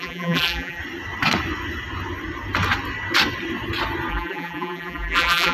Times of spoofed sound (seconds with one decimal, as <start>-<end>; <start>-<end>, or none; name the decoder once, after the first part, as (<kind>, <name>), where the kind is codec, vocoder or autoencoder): 0.0-0.8 (vocoder, BigVGAN v2); 4.1-5.5